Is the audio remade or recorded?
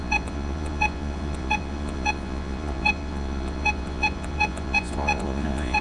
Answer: remade